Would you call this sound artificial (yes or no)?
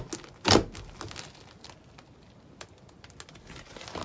no